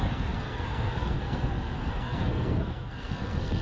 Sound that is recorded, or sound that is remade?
remade